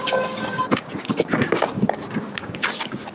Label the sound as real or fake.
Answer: fake